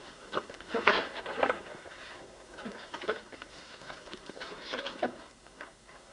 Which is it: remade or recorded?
remade